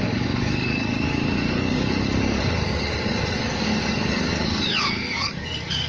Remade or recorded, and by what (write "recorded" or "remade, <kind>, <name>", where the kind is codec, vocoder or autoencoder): remade, codec, DAC